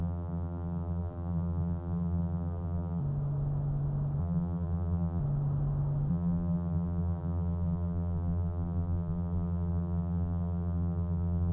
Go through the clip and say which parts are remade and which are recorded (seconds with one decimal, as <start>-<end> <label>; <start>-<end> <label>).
0.0-3.0 remade; 3.0-4.2 recorded; 4.2-5.2 remade; 5.2-6.1 recorded; 6.1-11.5 remade